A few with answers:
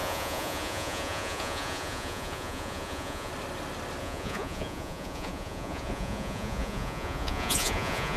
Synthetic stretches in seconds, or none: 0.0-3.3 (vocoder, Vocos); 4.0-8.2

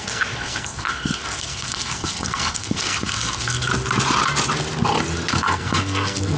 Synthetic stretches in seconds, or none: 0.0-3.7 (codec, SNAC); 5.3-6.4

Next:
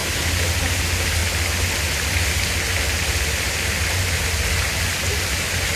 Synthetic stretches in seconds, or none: 0.0-0.6 (vocoder, BigVGAN v2)